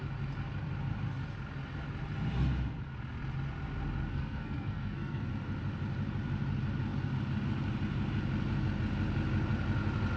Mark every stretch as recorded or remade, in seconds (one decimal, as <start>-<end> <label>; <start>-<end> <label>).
0.0-4.1 recorded; 4.1-5.3 remade; 5.3-10.2 recorded